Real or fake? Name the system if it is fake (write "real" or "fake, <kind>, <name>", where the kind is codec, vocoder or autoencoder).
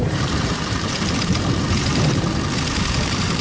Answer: fake, vocoder, BigVGAN v2